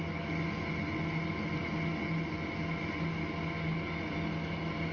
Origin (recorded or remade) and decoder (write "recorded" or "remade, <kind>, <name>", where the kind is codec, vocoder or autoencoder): recorded